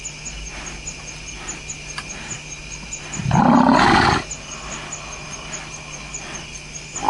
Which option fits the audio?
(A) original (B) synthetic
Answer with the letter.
A